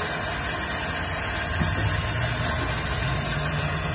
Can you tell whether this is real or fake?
real